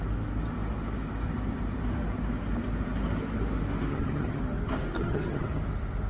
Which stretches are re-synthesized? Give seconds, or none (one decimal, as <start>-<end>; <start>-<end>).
3.9-4.4; 5.0-5.6